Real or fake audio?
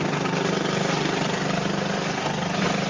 real